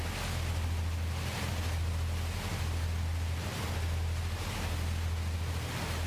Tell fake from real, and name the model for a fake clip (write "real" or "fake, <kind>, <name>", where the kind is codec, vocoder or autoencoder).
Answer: real